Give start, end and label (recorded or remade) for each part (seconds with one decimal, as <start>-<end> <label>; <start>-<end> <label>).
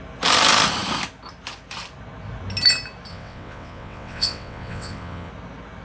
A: 0.0-3.1 recorded; 3.1-5.3 remade; 5.3-5.8 recorded